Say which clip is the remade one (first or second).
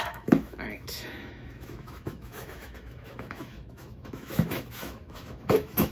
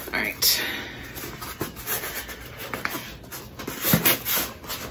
first